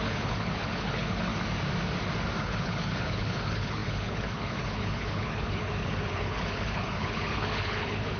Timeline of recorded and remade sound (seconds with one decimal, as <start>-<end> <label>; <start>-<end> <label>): 0.0-1.3 remade; 1.3-2.4 recorded; 2.4-8.2 remade